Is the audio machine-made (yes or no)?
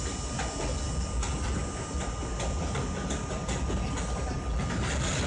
no